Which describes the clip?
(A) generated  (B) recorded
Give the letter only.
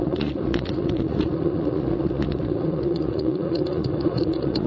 A